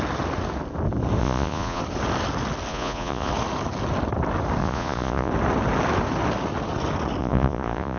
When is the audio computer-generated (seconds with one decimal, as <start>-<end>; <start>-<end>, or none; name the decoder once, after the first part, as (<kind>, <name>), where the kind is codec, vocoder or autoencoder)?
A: 1.2-1.8 (vocoder, Vocos); 2.7-3.3; 4.6-5.3; 7.2-8.0